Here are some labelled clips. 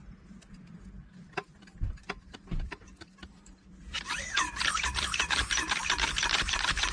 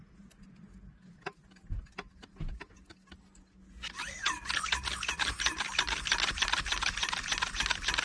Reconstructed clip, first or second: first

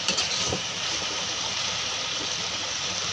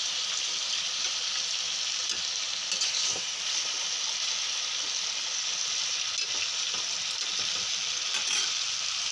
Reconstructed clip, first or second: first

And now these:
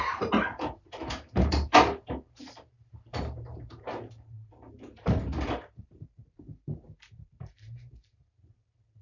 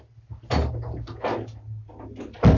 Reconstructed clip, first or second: first